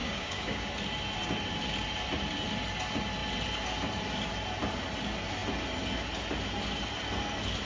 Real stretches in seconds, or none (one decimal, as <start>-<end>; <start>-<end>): 0.7-7.6